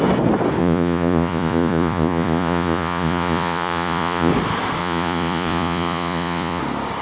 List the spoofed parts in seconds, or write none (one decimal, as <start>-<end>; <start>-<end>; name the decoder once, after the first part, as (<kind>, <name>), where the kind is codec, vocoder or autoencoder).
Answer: 0.6-4.3 (vocoder, Vocos); 4.8-6.6